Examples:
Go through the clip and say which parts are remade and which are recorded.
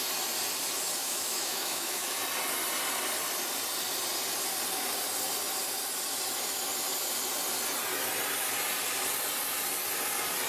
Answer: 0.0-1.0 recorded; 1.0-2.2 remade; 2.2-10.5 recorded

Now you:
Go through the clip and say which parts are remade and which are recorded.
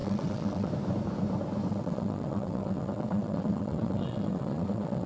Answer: 0.0-0.7 remade; 0.7-1.7 recorded; 1.7-5.1 remade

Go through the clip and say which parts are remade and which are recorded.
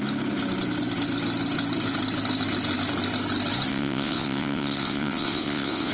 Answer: 0.0-3.7 recorded; 3.7-5.9 remade